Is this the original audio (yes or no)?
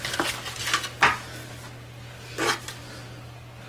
yes